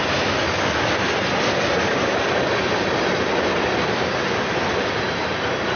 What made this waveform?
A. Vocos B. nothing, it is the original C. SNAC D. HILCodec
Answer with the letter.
B